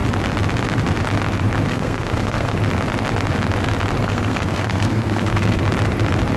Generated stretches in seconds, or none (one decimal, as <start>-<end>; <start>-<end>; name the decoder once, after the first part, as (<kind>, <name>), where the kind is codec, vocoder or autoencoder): 1.7-2.6 (codec, SNAC); 4.0-5.6